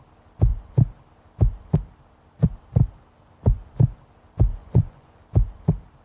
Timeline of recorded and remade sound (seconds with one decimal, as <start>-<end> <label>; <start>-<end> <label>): 0.0-4.5 recorded; 4.5-5.2 remade; 5.2-6.0 recorded